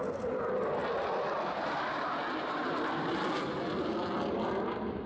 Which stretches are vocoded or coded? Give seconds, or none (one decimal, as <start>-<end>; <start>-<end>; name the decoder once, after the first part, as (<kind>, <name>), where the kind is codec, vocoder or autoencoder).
none

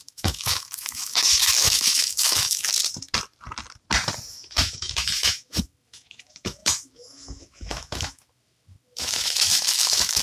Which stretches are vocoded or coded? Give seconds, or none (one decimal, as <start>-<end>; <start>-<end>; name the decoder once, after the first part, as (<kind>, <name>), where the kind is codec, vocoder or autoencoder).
0.0-2.7 (autoencoder, DAC-VAE); 4.3-10.2